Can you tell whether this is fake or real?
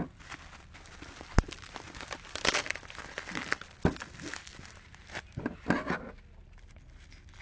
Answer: real